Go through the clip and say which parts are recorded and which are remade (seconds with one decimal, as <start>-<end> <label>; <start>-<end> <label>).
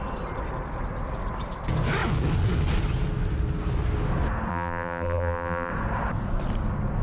0.0-4.5 recorded; 4.5-5.7 remade; 5.7-7.0 recorded